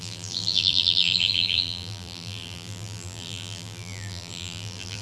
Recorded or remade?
remade